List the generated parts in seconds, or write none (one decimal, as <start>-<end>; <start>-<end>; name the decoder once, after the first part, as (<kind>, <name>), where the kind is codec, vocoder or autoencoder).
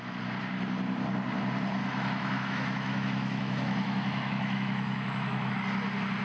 1.8-5.5 (autoencoder, DAC-VAE)